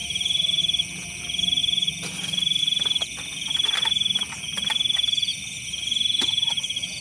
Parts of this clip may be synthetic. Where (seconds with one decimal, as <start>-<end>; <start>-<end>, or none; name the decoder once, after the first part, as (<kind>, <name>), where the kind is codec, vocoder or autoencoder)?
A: 0.0-0.6 (vocoder, BigVGAN v2); 5.3-6.5

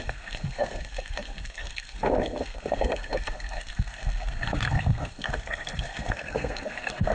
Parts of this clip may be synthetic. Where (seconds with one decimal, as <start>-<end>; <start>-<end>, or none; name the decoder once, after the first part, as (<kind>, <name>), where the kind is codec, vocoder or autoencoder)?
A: 0.0-7.1 (codec, SNAC)

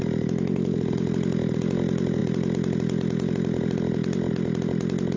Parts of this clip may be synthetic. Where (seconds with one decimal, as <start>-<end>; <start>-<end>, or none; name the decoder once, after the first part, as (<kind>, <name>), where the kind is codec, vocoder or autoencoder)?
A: none

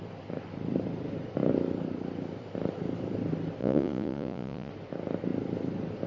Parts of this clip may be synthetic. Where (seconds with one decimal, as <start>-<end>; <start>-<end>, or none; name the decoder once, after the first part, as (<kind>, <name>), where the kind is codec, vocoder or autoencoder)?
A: 3.6-4.7 (vocoder, Vocos)

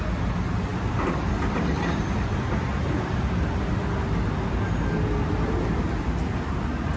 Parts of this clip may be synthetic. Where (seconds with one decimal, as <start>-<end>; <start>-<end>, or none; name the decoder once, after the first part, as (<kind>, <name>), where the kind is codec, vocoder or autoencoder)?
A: 0.7-3.7 (vocoder, BigVGAN v2)